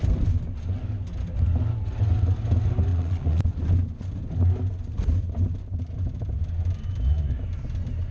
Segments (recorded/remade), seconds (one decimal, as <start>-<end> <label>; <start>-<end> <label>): 0.0-2.9 recorded; 2.9-3.5 remade; 3.5-8.1 recorded